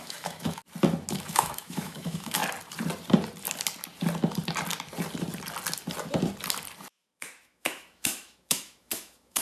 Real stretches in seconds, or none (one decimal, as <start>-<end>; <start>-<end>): 0.6-1.1; 2.4-6.9